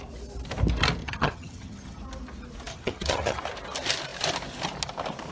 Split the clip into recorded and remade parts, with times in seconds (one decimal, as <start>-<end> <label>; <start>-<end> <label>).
0.0-1.0 recorded; 1.0-2.0 remade; 2.0-2.7 recorded; 2.7-3.4 remade; 3.4-5.3 recorded